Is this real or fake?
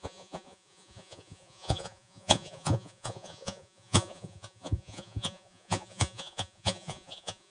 fake